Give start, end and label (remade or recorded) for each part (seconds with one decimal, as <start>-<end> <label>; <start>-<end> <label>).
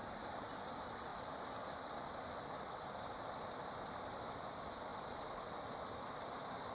0.0-6.7 recorded